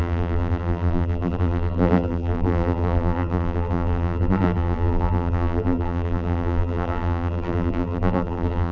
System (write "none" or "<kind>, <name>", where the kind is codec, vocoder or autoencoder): vocoder, BigVGAN v2